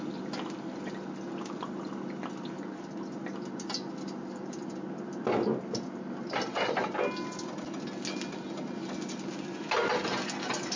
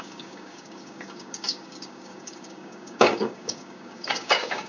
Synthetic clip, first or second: second